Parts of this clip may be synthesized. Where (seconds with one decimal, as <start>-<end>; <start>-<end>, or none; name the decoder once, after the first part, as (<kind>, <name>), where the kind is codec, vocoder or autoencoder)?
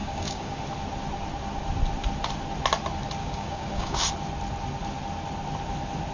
0.0-0.6 (codec, DAC); 3.2-4.1